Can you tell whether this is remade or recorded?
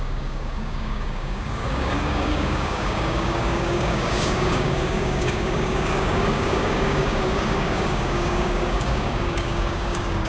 remade